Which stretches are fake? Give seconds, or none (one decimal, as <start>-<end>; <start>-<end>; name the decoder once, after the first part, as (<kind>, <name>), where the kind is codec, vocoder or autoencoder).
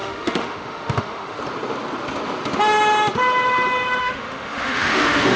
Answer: 0.0-1.4 (autoencoder, DAC-VAE); 4.0-5.4